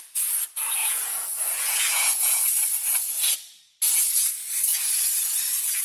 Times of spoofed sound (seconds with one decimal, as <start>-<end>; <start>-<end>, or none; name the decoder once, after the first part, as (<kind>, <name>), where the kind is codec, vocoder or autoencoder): 0.8-2.4 (vocoder, Vocos); 4.7-5.8